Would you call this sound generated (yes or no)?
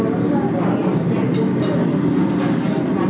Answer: no